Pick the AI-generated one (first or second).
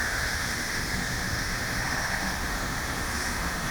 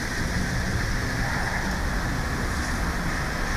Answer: first